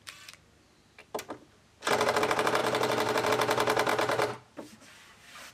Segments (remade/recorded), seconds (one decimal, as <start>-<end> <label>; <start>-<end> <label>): 0.0-2.6 recorded; 2.6-3.3 remade; 3.3-3.9 recorded; 3.9-5.5 remade

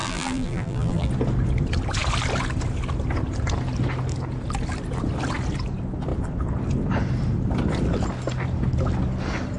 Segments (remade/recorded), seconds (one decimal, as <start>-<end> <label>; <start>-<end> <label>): 0.0-1.1 remade; 1.1-9.6 recorded

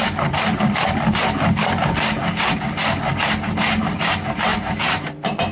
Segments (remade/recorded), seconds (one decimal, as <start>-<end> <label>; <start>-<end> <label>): 0.0-4.5 recorded; 4.5-5.5 remade